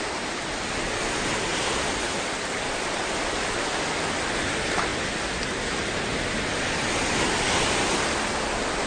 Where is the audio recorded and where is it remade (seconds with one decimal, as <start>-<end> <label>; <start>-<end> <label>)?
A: 0.0-8.9 recorded